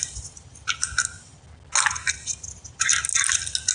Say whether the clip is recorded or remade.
recorded